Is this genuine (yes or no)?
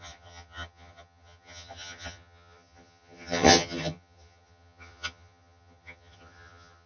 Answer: no